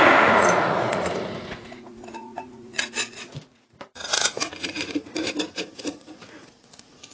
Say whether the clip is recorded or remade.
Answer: remade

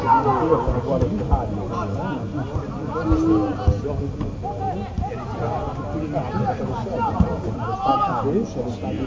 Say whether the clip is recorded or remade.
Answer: recorded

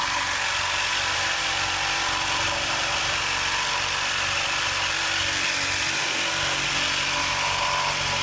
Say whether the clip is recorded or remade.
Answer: remade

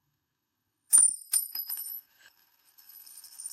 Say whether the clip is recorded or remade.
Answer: remade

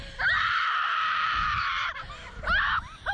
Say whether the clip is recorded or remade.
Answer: recorded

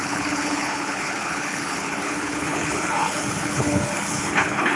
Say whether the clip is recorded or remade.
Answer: remade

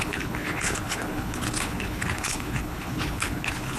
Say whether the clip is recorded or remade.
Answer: remade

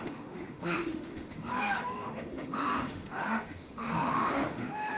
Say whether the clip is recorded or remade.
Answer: remade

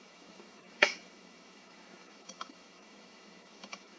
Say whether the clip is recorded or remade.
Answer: remade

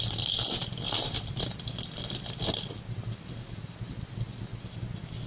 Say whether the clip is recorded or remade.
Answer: recorded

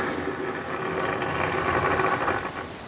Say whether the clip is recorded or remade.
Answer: recorded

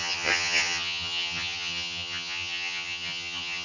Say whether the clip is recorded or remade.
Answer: remade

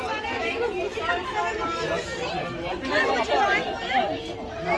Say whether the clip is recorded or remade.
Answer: recorded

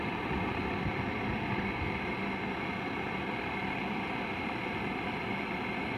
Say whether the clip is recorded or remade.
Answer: recorded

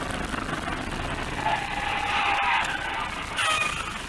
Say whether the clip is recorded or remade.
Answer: recorded